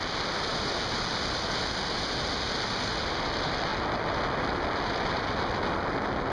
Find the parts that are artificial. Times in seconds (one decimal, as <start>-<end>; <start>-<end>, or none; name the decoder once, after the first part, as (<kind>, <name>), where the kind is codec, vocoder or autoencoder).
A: none